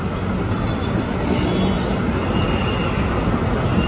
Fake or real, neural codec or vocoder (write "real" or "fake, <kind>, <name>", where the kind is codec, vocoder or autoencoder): real